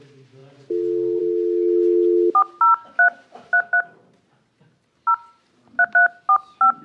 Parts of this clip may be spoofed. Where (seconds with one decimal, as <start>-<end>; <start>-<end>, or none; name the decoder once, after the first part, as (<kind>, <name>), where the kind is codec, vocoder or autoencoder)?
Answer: none